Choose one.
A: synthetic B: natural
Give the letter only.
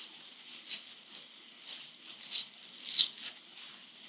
B